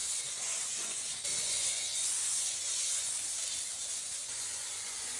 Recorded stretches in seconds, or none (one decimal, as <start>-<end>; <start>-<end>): 3.1-3.8